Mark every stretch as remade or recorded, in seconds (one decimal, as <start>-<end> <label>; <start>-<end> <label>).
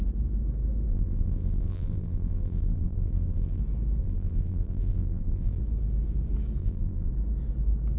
0.0-0.9 recorded; 0.9-3.6 remade; 3.6-4.0 recorded; 4.0-5.6 remade; 5.6-6.6 recorded; 6.6-7.1 remade; 7.1-8.0 recorded